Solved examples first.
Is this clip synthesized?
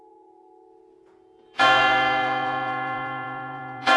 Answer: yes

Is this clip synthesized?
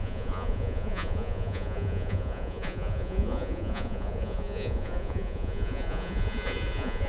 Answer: yes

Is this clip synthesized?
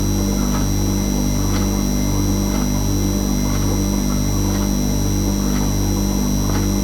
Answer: no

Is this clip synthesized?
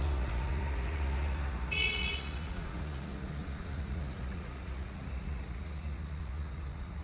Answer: yes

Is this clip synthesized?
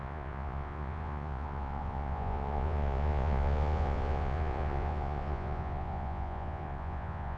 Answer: yes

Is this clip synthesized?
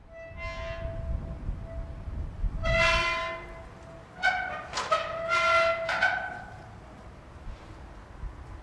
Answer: no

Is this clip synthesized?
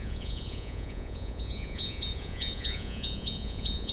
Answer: yes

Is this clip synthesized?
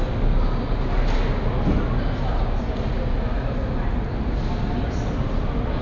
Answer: no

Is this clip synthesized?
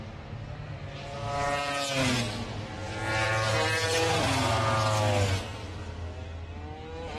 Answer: no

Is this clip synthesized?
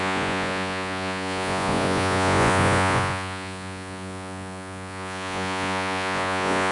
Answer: yes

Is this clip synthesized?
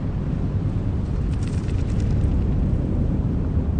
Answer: no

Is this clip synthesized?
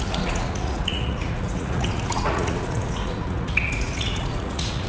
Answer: yes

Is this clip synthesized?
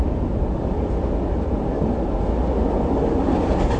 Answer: no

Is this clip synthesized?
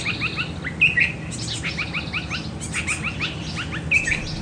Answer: no